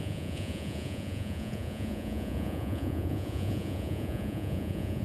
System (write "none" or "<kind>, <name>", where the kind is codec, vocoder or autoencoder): vocoder, Vocos